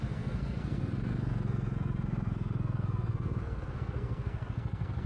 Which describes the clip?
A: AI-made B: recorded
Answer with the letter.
A